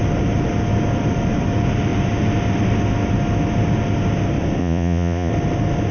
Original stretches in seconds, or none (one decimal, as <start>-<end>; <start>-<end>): 0.0-4.6; 5.3-5.9